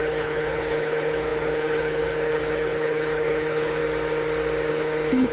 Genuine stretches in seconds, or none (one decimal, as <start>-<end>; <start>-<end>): 3.8-4.7